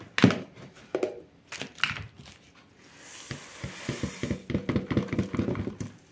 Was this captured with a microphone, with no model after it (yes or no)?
yes